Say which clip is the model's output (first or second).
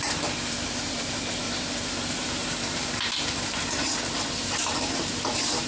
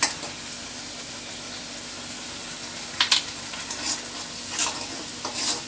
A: first